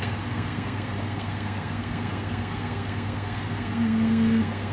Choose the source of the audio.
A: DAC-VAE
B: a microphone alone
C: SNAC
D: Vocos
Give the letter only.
C